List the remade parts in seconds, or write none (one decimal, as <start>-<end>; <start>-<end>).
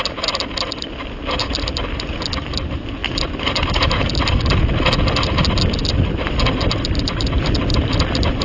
none